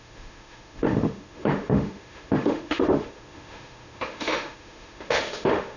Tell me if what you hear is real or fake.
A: fake